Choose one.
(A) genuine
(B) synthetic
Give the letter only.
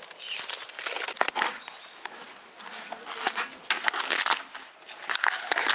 A